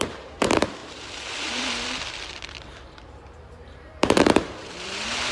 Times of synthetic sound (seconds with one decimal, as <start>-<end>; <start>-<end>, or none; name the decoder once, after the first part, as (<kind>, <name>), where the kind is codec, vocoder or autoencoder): 0.0-5.3 (vocoder, BigVGAN v2)